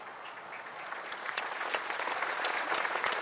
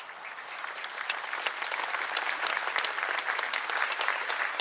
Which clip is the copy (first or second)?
first